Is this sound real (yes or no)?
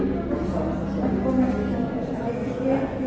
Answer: yes